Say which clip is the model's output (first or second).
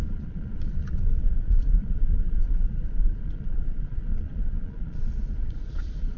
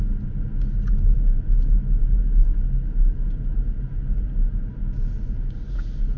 first